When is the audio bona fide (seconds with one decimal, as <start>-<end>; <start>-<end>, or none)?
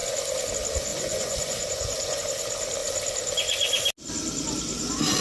0.0-0.9; 2.2-5.2